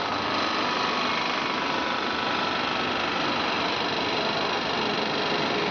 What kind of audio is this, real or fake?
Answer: real